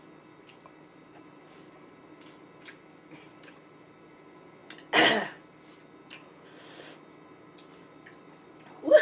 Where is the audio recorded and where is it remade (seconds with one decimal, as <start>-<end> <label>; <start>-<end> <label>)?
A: 0.0-4.6 remade; 4.6-8.5 recorded; 8.5-9.0 remade